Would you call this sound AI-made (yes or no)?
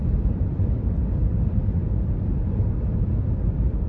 no